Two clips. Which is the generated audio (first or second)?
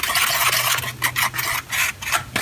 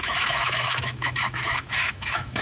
second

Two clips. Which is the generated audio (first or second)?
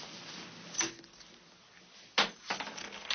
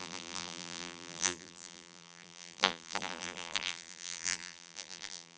second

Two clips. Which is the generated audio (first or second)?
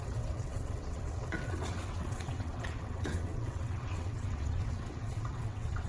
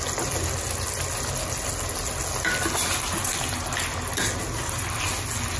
first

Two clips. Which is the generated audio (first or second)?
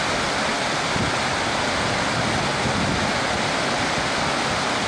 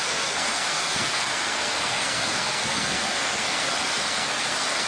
second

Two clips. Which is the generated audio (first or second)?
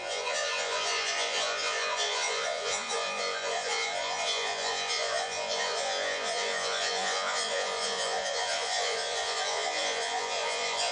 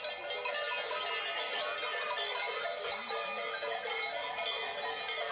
first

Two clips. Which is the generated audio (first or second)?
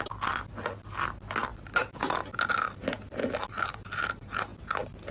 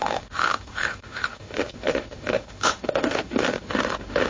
second